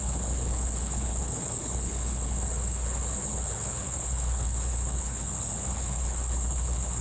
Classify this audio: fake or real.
fake